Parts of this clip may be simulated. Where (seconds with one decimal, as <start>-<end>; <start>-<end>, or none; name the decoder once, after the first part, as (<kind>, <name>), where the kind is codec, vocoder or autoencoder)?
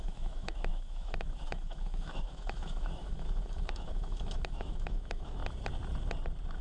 0.0-5.4 (autoencoder, DAC-VAE)